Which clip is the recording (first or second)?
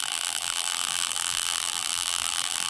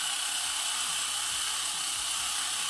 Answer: second